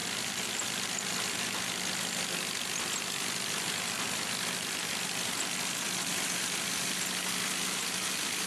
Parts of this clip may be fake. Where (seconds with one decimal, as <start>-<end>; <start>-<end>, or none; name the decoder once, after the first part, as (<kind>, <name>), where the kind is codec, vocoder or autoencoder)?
0.0-0.9 (vocoder, BigVGAN v2)

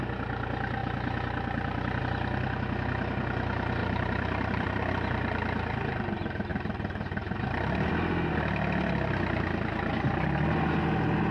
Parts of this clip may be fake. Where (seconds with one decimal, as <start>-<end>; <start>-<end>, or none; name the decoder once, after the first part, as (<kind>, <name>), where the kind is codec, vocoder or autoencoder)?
3.8-4.9 (vocoder, BigVGAN v2); 6.5-7.9

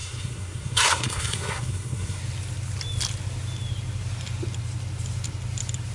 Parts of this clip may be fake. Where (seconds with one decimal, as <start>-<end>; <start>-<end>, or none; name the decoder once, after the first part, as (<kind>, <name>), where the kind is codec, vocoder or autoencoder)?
0.0-2.2 (codec, SNAC)

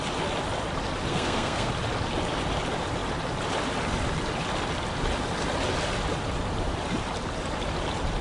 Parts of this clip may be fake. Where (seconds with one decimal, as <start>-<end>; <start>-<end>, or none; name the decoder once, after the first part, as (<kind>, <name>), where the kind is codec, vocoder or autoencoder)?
1.1-1.7 (codec, SNAC)

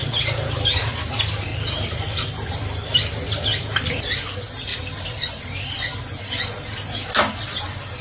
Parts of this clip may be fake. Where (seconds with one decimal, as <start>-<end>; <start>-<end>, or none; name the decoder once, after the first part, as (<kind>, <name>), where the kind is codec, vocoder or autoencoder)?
none

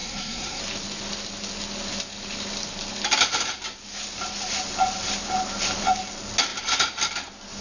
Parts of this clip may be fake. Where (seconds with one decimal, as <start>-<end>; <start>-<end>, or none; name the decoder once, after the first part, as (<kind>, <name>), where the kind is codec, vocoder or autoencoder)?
0.0-0.6 (codec, SNAC)